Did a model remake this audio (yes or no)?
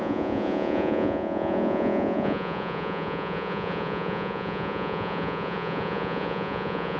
yes